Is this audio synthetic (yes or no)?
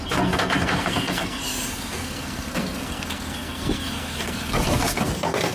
yes